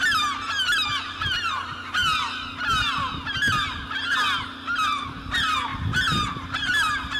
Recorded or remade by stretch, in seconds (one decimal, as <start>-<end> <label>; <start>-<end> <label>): 0.0-7.2 recorded